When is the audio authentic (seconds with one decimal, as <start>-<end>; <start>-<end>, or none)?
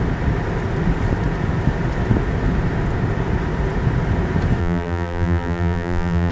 0.0-4.6